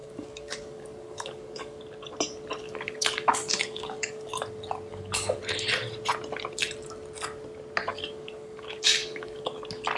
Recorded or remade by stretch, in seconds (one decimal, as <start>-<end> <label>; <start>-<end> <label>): 0.0-1.8 remade; 1.8-2.6 recorded; 2.6-4.4 remade; 4.4-4.9 recorded; 4.9-5.4 remade; 5.4-7.9 recorded; 7.9-9.6 remade; 9.6-10.0 recorded